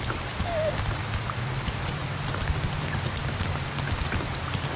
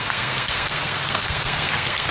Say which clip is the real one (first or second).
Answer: first